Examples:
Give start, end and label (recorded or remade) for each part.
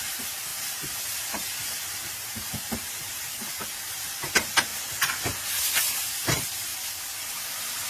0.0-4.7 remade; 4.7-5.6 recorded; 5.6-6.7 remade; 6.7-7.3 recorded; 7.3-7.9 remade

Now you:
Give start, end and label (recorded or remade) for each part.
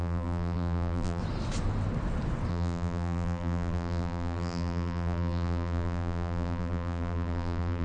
0.0-1.2 remade; 1.2-2.5 recorded; 2.5-7.8 remade